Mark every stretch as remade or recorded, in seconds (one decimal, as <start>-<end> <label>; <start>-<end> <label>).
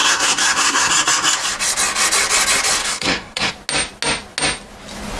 0.0-0.9 remade; 0.9-2.8 recorded; 2.8-3.5 remade; 3.5-5.2 recorded